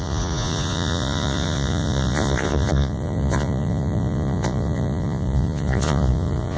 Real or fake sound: fake